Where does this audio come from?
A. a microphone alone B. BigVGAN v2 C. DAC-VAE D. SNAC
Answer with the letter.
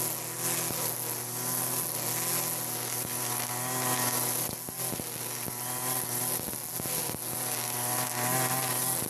A